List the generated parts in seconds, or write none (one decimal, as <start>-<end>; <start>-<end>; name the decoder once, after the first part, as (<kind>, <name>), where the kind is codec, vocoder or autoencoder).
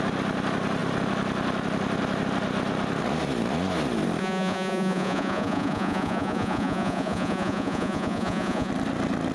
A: 4.2-8.7 (vocoder, Vocos)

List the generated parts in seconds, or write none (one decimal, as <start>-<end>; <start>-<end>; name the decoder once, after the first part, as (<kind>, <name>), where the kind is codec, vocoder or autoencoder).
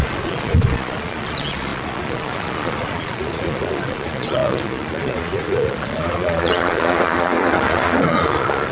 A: 0.0-8.7 (vocoder, Vocos)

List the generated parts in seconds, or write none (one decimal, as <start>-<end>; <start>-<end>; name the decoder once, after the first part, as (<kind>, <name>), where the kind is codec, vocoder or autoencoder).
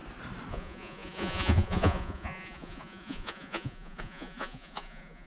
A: 0.5-5.3 (vocoder, Vocos)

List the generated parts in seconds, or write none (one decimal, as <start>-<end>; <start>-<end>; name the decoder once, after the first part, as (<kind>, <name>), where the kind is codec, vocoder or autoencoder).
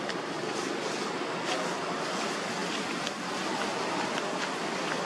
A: none